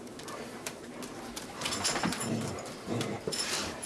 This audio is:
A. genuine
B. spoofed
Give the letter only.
B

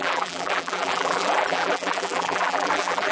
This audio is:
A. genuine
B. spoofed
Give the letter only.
B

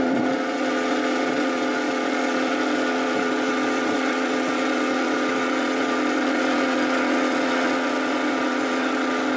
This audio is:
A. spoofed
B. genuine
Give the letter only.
A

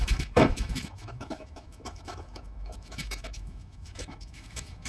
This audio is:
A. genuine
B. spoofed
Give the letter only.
B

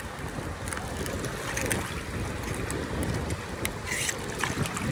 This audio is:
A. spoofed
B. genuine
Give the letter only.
B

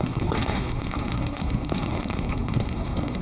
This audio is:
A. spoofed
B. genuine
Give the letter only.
A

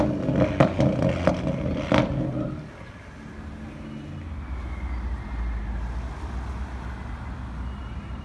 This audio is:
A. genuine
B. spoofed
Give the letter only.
A